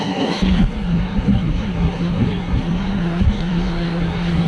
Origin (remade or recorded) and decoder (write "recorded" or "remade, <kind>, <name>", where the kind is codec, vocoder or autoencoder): remade, codec, SNAC